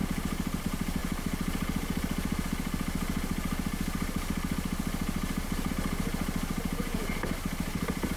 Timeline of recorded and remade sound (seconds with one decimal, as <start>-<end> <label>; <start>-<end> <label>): 0.0-8.2 recorded